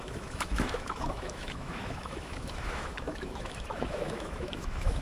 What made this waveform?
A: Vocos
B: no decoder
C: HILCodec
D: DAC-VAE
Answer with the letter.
D